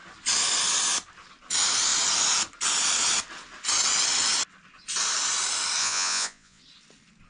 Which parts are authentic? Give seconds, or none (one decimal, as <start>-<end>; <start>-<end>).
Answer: 0.0-5.8; 6.6-7.3